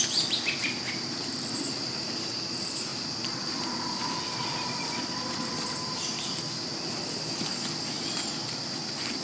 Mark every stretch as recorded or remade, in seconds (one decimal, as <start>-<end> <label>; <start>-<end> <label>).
0.0-9.2 recorded